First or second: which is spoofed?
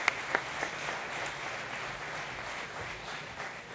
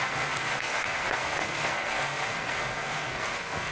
second